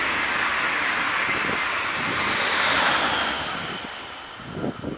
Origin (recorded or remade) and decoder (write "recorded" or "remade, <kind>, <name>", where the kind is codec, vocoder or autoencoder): recorded